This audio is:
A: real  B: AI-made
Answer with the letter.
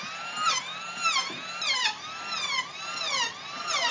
A